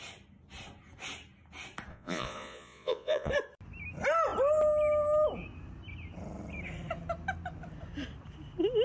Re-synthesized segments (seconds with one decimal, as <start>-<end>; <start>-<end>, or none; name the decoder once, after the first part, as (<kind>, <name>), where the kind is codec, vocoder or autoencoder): 1.9-3.3 (vocoder, Vocos)